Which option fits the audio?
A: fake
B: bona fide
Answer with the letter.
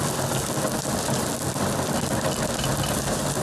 B